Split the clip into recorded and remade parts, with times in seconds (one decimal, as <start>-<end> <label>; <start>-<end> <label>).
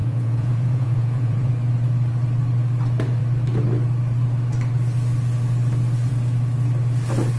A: 0.0-1.5 remade; 1.5-7.4 recorded